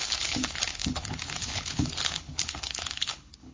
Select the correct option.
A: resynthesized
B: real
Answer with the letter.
A